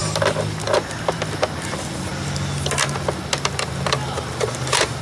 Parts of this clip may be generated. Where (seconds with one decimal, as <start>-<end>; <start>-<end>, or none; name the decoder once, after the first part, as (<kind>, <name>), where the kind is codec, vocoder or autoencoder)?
1.0-2.1 (vocoder, BigVGAN v2); 4.2-5.0